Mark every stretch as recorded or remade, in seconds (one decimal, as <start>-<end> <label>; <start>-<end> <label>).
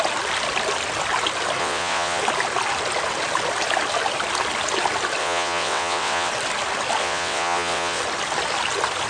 0.0-1.6 recorded; 1.6-2.2 remade; 2.2-5.2 recorded; 5.2-6.3 remade; 6.3-7.0 recorded; 7.0-8.0 remade; 8.0-9.1 recorded